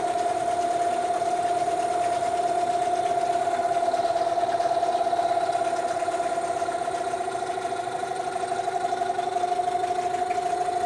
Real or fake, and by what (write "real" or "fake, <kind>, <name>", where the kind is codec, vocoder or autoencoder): real